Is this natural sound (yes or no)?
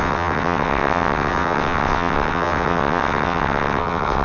no